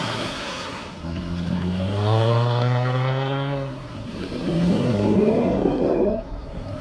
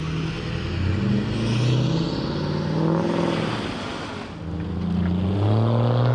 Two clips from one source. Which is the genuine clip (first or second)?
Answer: second